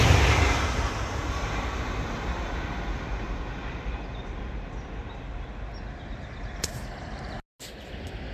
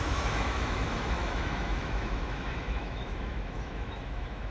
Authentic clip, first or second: first